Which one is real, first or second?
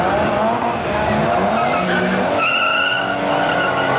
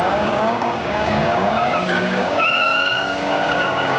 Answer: first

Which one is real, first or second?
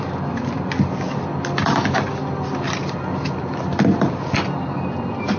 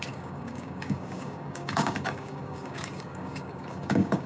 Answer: first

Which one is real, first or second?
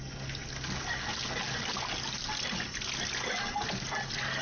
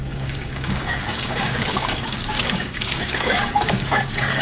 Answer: first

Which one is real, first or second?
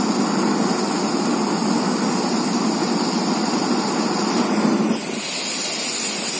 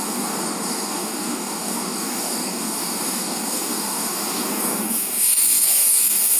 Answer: first